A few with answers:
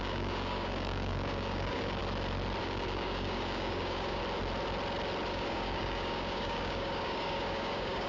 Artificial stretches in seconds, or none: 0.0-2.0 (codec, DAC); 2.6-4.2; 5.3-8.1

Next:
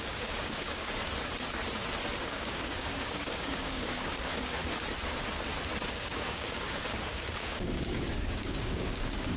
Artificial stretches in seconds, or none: 0.0-1.0 (codec, DAC); 2.2-4.6; 5.9-9.4